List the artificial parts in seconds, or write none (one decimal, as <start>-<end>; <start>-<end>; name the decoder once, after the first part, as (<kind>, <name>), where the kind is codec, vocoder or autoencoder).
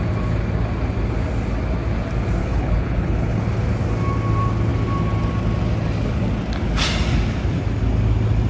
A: 2.4-3.4 (codec, HILCodec)